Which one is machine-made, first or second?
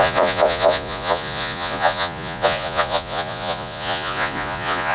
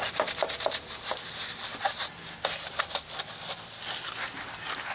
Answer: first